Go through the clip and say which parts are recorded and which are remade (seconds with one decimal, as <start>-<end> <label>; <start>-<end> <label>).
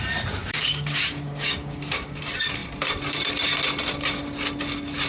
0.0-0.4 recorded; 0.4-2.2 remade; 2.2-5.1 recorded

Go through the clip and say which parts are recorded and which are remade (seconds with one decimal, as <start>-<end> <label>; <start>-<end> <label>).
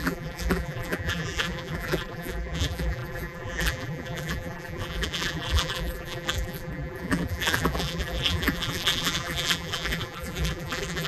0.0-11.1 remade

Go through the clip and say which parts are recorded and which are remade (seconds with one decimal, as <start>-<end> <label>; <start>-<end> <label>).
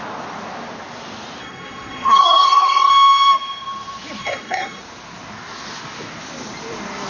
0.0-1.4 recorded; 1.4-2.9 remade; 2.9-4.2 recorded; 4.2-4.8 remade; 4.8-7.1 recorded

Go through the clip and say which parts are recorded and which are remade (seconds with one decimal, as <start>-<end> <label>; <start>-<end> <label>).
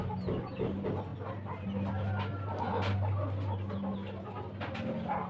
0.0-5.3 recorded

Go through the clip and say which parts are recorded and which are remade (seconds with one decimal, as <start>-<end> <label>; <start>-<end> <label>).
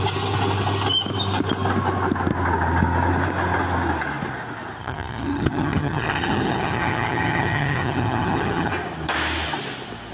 0.0-4.8 recorded; 4.8-8.7 remade; 8.7-10.1 recorded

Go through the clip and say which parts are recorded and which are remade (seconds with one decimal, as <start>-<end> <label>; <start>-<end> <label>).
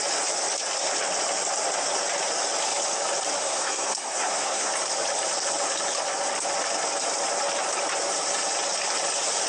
0.0-3.4 recorded; 3.4-4.7 remade; 4.7-9.5 recorded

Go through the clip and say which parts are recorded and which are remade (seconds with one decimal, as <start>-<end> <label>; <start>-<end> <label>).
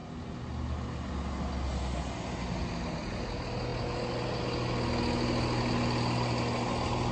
0.0-7.1 recorded